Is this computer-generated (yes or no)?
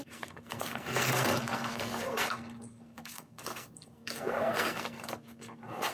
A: yes